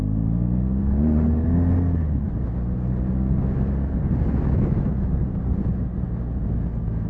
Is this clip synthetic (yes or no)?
no